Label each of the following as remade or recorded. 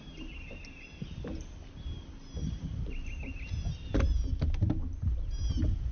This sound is recorded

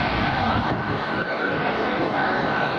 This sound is remade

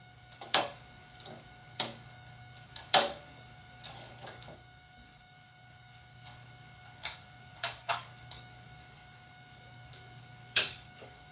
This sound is remade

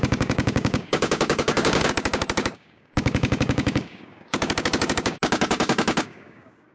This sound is remade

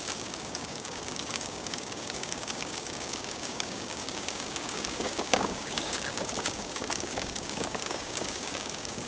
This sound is remade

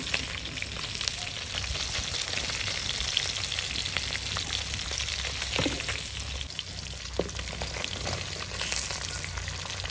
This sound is recorded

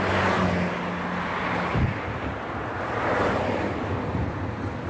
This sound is recorded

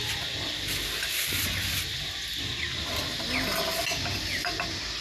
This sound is recorded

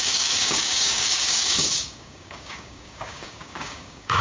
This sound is remade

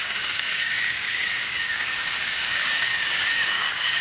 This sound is remade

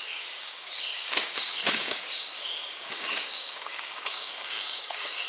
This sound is remade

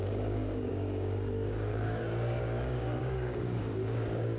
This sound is remade